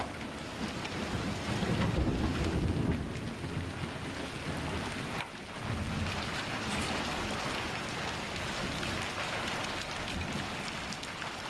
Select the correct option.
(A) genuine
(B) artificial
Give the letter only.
A